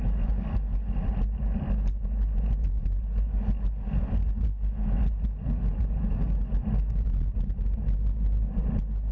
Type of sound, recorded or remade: recorded